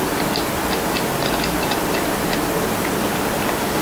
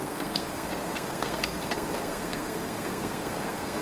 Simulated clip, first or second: second